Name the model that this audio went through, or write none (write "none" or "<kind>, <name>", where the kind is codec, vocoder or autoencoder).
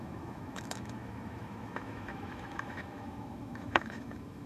autoencoder, DAC-VAE